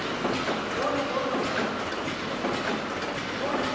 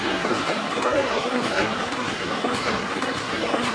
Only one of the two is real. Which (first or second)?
first